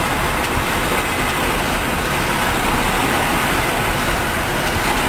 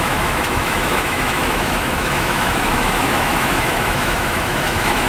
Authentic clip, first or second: first